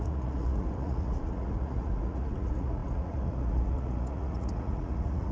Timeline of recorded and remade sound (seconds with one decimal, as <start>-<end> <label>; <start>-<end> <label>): 0.0-5.3 remade